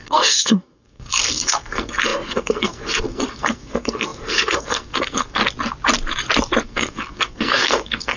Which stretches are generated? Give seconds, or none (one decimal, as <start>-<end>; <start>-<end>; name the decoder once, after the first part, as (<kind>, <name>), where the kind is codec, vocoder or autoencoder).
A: 0.0-5.4 (codec, SNAC); 6.6-8.2